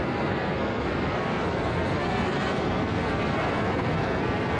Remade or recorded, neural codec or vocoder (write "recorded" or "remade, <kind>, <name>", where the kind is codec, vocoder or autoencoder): remade, codec, SNAC